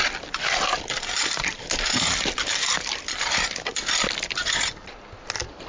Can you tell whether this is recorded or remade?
recorded